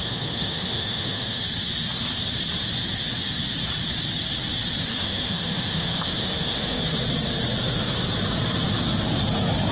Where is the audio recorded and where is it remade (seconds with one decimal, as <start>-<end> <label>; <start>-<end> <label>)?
0.0-1.4 remade; 1.4-4.9 recorded; 4.9-6.8 remade; 6.8-9.7 recorded